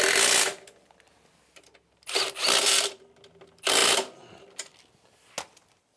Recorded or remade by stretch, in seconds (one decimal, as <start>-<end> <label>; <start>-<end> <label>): 0.0-6.0 recorded